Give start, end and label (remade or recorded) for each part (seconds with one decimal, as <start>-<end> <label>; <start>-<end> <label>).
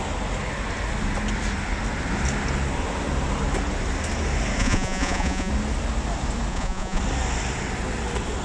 0.0-4.6 recorded; 4.6-5.5 remade; 5.5-6.5 recorded; 6.5-7.0 remade; 7.0-8.4 recorded